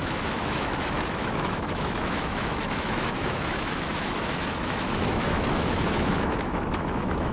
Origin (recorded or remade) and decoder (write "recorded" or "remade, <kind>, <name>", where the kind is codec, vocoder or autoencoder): remade, autoencoder, DAC-VAE